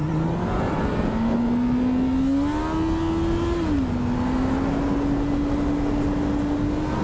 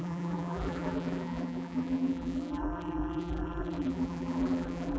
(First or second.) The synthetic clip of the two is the second